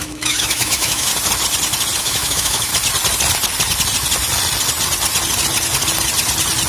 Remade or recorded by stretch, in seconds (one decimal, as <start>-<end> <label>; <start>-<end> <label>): 0.0-1.1 remade; 1.1-2.0 recorded; 2.0-2.7 remade; 2.7-6.7 recorded